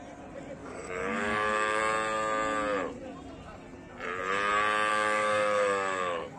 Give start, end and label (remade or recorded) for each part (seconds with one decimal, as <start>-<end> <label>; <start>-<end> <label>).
0.0-0.6 recorded; 0.6-1.8 remade; 1.8-4.9 recorded; 4.9-6.4 remade